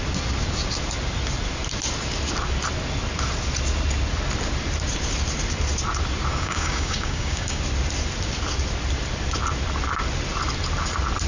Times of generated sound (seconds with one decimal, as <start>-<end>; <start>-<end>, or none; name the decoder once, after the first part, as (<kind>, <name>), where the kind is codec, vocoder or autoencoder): 6.3-7.6 (codec, DAC)